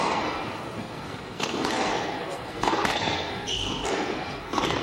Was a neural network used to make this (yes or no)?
yes